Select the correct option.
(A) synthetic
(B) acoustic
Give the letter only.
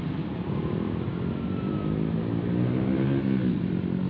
B